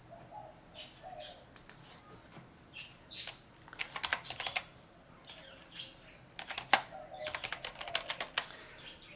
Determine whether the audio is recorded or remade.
recorded